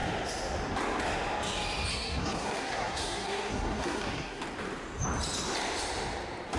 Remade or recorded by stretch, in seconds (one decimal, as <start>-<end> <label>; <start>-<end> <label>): 0.0-1.9 recorded; 1.9-4.4 remade; 4.4-6.6 recorded